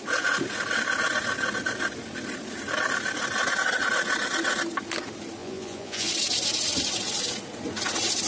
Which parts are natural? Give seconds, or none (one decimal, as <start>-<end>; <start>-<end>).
0.0-5.4; 6.1-8.3